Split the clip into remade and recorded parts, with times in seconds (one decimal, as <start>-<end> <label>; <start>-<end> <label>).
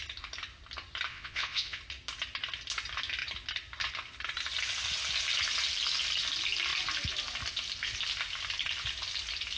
0.0-1.1 recorded; 1.1-1.8 remade; 1.8-9.6 recorded